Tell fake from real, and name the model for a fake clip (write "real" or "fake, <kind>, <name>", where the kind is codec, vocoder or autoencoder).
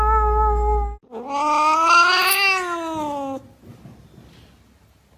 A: real